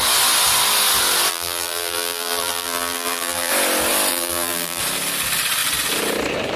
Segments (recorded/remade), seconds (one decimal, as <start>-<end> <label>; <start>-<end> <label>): 0.0-1.3 recorded; 1.3-3.5 remade; 3.5-4.1 recorded; 4.1-4.8 remade; 4.8-6.6 recorded